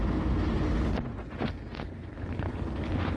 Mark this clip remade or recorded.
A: recorded